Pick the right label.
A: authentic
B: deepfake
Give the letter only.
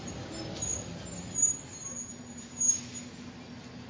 A